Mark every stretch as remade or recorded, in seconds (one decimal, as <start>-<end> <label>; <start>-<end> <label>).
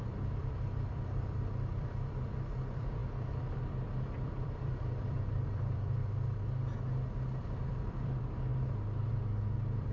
0.0-6.0 remade; 6.0-7.4 recorded; 7.4-8.5 remade; 8.5-9.1 recorded; 9.1-9.9 remade